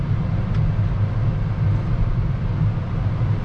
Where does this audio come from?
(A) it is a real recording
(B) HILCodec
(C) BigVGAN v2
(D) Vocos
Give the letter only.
A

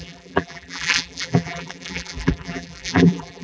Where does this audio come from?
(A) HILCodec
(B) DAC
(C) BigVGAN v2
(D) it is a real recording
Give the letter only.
C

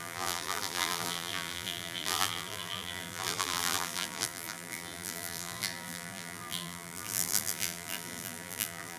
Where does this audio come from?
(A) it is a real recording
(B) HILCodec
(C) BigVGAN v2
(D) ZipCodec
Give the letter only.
C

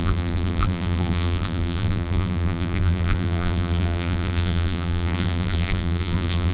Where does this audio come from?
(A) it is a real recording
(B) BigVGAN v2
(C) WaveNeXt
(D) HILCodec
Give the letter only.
B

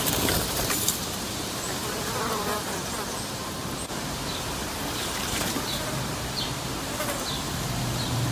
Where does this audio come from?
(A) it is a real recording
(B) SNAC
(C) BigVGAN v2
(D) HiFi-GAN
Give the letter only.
C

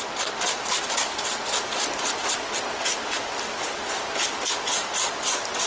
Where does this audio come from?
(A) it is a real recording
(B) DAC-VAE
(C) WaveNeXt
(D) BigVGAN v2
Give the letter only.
A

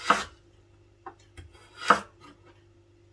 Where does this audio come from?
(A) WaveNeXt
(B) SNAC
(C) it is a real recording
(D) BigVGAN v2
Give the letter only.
C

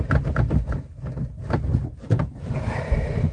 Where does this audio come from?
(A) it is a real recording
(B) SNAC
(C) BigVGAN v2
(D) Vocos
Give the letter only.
A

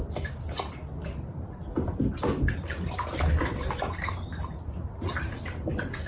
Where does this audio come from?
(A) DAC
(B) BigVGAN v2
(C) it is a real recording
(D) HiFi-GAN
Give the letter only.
B